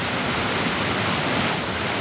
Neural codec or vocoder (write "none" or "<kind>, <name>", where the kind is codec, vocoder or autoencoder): none